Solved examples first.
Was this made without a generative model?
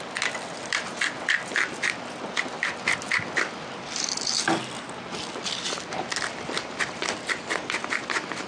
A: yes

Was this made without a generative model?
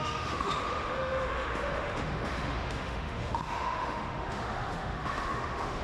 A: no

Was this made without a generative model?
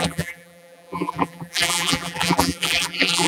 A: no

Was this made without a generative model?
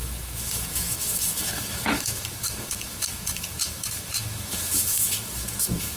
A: no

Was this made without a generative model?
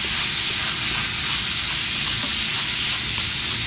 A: yes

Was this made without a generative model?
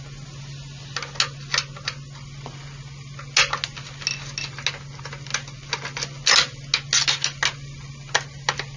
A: yes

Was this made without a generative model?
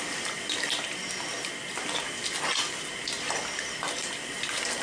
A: yes